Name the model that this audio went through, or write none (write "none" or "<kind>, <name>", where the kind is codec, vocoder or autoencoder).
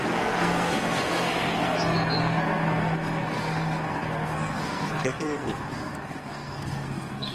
codec, SNAC